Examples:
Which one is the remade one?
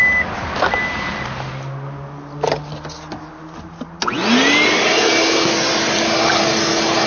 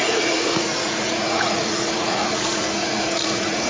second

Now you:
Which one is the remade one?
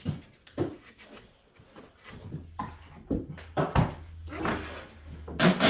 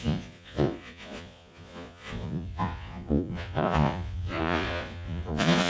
second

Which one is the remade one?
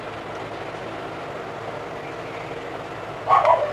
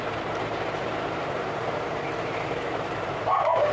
second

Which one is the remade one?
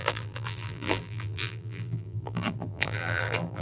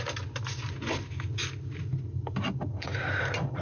first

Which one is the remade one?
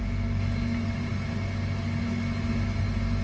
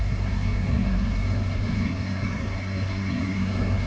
second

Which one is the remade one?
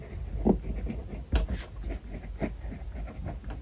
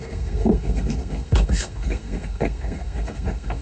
second